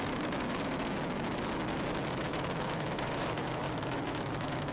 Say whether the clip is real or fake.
fake